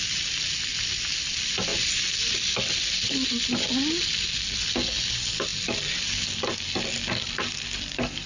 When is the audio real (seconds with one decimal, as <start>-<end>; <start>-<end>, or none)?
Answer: 0.0-8.3